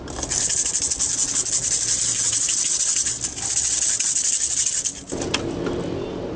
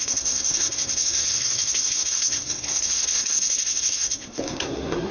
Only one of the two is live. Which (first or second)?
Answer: first